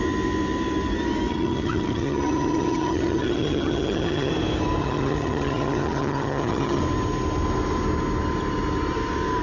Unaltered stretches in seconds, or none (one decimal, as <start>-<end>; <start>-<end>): 0.0-1.3; 4.3-4.8; 6.8-9.4